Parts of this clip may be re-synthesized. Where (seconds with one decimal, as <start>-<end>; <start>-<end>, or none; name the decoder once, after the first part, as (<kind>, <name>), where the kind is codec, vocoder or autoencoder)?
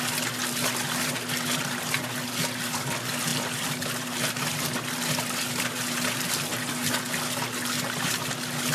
none